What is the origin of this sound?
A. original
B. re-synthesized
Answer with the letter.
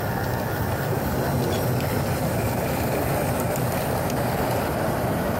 A